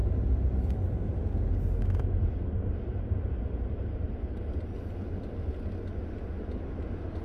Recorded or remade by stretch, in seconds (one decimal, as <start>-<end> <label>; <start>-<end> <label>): 0.0-7.2 recorded

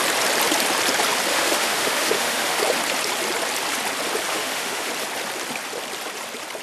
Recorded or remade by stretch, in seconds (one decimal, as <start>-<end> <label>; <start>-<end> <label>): 0.0-1.3 recorded; 1.3-2.6 remade; 2.6-4.3 recorded; 4.3-4.9 remade; 4.9-6.6 recorded

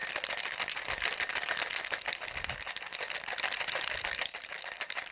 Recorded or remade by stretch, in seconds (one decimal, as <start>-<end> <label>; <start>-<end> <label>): 0.0-1.6 recorded; 1.6-5.1 remade